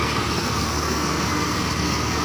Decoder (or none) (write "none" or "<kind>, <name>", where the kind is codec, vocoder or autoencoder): codec, SNAC